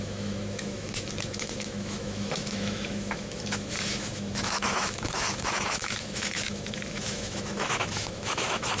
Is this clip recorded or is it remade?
remade